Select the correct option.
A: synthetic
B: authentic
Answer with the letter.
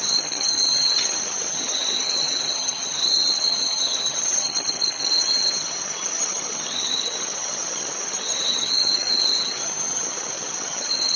A